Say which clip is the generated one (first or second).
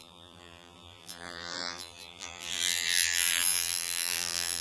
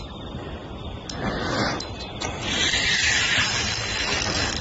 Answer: first